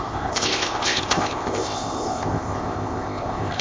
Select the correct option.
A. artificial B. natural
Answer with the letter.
A